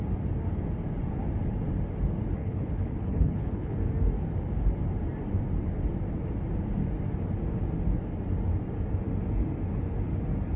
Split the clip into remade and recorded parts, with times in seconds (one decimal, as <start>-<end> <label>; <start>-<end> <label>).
0.0-2.4 recorded; 2.4-3.8 remade; 3.8-10.6 recorded